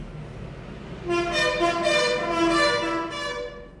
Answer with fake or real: real